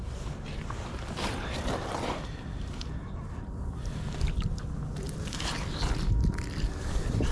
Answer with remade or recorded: remade